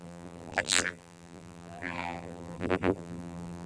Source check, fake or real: fake